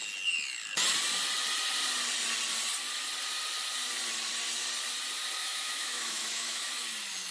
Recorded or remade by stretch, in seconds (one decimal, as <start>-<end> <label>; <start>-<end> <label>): 0.0-5.4 recorded; 5.4-6.7 remade; 6.7-7.3 recorded